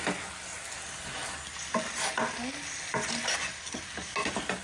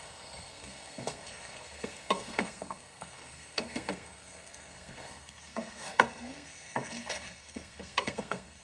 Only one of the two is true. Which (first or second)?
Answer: first